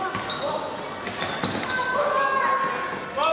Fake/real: real